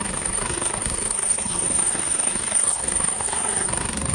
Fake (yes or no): yes